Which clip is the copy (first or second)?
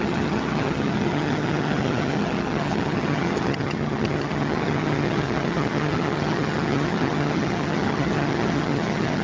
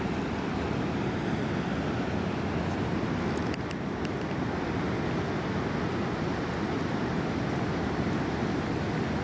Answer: first